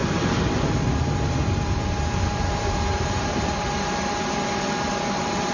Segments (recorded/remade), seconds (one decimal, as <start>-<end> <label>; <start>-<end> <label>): 0.0-2.9 recorded; 2.9-3.7 remade; 3.7-5.5 recorded